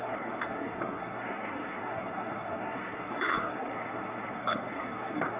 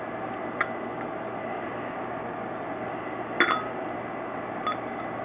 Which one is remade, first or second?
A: first